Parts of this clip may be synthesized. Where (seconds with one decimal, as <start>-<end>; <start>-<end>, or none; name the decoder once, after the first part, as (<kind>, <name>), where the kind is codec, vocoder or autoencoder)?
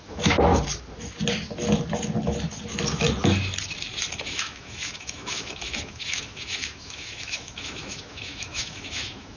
0.0-0.5 (autoencoder, DAC-VAE); 4.2-9.4